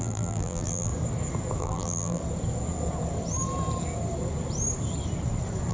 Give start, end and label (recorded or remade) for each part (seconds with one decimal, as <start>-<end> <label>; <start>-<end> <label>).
0.0-0.9 remade; 0.9-1.6 recorded; 1.6-2.2 remade; 2.2-5.7 recorded